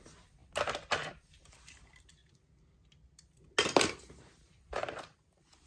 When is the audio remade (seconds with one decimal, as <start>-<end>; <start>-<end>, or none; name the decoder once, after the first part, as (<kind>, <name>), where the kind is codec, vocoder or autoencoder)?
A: none